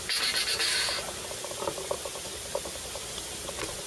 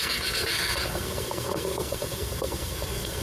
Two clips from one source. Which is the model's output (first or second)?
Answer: second